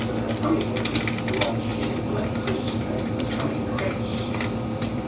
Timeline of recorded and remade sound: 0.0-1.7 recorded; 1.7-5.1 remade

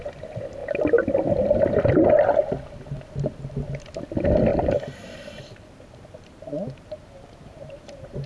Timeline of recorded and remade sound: 0.0-4.5 recorded; 4.5-8.3 remade

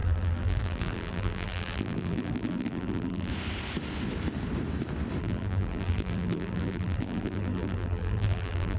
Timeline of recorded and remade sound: 0.0-3.3 remade; 3.3-5.2 recorded; 5.2-8.8 remade

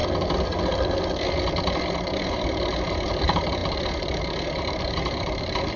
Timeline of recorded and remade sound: 0.0-1.9 recorded; 1.9-5.8 remade

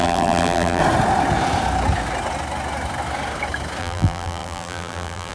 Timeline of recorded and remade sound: 0.0-0.8 remade; 0.8-3.8 recorded; 3.8-5.3 remade

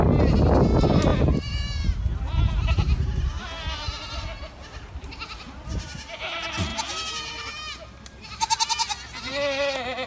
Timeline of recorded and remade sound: 0.0-10.1 recorded

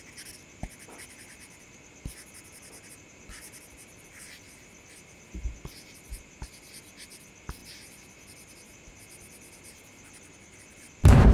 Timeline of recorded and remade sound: 0.0-11.3 recorded